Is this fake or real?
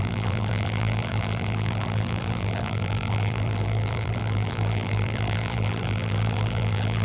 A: fake